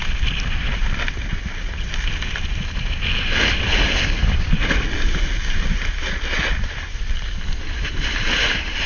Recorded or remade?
recorded